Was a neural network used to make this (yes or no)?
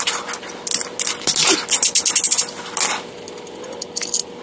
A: no